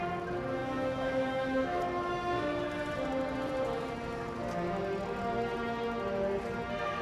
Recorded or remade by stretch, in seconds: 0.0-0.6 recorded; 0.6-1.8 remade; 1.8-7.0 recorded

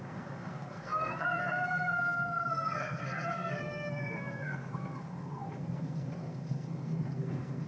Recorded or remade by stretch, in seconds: 0.0-7.7 remade

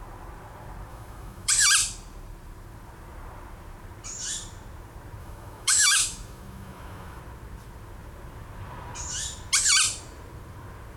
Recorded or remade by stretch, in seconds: 0.0-0.9 recorded; 0.9-1.5 remade; 1.5-5.2 recorded; 5.2-7.2 remade; 7.2-11.0 recorded

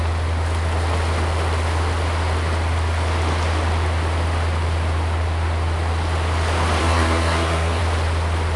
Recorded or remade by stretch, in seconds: 0.0-6.8 recorded; 6.8-7.8 remade; 7.8-8.6 recorded

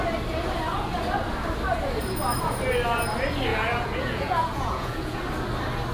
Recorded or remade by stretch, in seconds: 0.0-3.5 recorded; 3.5-5.2 remade; 5.2-5.9 recorded

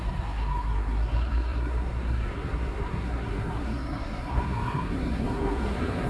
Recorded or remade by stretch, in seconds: 0.0-6.1 remade

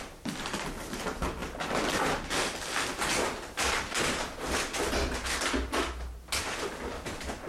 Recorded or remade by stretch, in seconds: 0.0-7.5 recorded